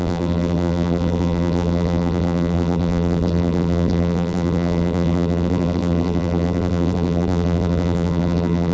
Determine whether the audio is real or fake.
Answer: fake